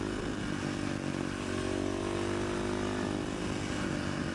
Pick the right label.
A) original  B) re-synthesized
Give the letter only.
A